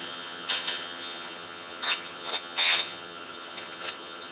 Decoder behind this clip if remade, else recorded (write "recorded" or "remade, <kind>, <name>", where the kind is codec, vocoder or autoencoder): remade, vocoder, HiFi-GAN